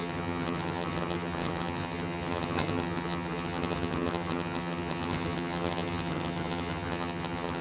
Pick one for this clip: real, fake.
fake